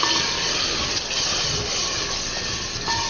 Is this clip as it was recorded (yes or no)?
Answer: yes